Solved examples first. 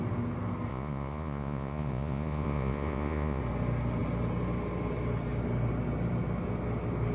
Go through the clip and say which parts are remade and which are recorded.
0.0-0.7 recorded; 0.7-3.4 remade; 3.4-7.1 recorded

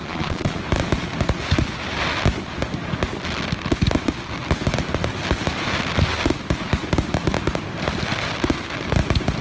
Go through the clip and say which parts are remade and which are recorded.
0.0-0.6 remade; 0.6-9.4 recorded

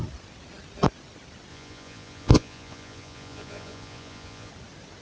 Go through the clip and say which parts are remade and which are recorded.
0.0-1.5 recorded; 1.5-4.5 remade; 4.5-5.0 recorded

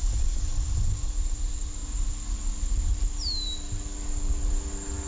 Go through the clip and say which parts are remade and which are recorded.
0.0-5.1 recorded

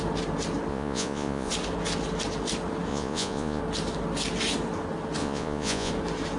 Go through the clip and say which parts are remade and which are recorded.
0.0-0.7 recorded; 0.7-1.5 remade; 1.5-2.9 recorded; 2.9-3.6 remade; 3.6-5.2 recorded; 5.2-5.9 remade; 5.9-6.4 recorded

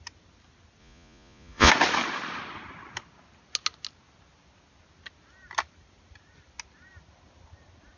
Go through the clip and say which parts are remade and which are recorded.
0.0-0.8 recorded; 0.8-1.7 remade; 1.7-8.0 recorded